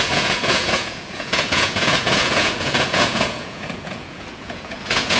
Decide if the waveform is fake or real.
fake